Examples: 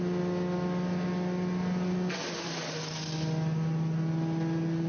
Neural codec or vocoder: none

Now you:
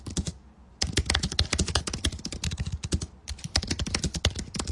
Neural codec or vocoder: none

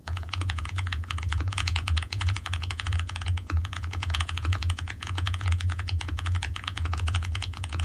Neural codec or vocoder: vocoder, Vocos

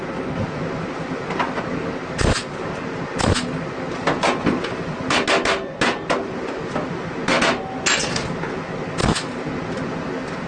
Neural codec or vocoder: none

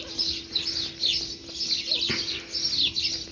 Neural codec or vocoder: none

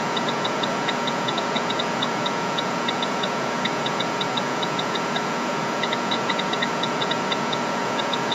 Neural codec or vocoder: vocoder, Vocos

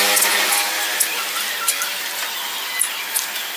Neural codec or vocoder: none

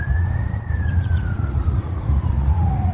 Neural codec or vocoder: vocoder, Vocos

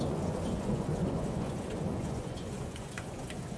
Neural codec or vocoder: vocoder, Vocos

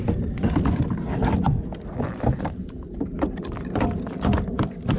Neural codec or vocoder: none